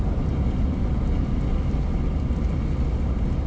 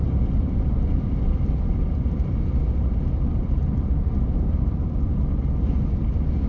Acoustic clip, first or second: first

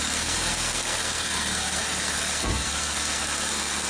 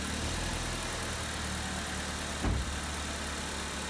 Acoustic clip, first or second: second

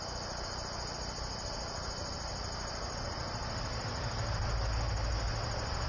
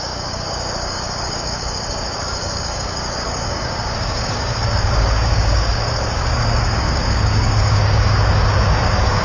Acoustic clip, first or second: first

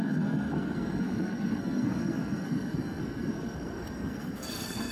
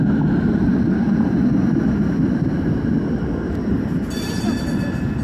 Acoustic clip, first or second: second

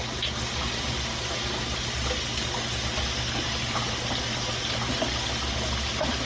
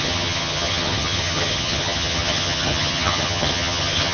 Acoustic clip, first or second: first